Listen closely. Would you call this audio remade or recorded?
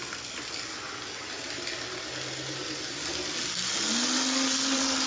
recorded